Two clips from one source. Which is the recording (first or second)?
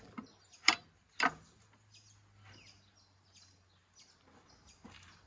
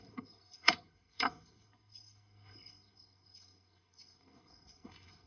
first